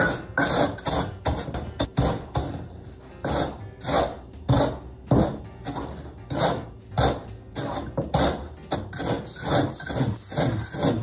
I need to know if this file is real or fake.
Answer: real